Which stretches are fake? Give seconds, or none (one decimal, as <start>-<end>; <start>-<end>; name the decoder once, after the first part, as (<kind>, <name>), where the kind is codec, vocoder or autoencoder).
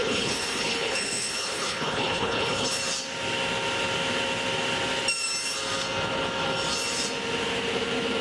0.0-2.8 (codec, HILCodec)